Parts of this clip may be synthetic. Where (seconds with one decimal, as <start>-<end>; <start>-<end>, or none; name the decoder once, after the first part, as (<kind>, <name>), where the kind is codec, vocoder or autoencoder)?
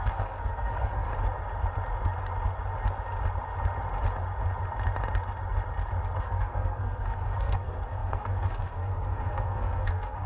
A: 0.0-1.1 (codec, SNAC); 6.2-10.3